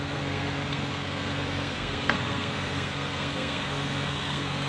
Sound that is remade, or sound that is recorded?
remade